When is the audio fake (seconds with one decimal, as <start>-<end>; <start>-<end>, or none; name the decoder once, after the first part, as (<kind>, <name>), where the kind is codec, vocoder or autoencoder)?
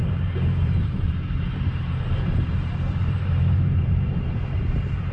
0.0-5.1 (vocoder, BigVGAN v2)